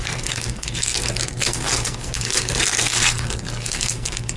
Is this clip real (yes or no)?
no